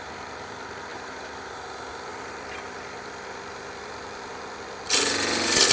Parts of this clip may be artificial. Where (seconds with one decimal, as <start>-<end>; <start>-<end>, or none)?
0.9-1.5; 2.1-4.3

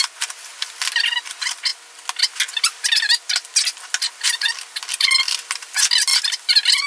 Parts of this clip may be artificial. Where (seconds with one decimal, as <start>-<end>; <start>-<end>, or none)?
none